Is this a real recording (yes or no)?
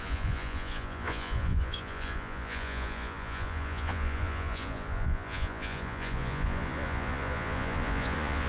no